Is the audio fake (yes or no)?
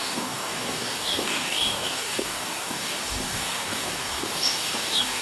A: yes